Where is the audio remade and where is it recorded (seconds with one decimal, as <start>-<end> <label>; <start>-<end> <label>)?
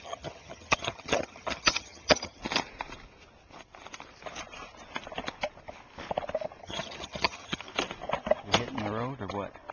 0.0-2.4 remade; 2.4-6.6 recorded; 6.6-7.7 remade; 7.7-9.7 recorded